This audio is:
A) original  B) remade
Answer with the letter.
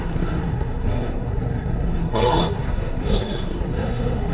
B